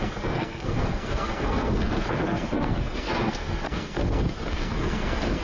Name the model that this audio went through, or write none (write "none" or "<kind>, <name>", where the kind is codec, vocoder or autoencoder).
codec, SNAC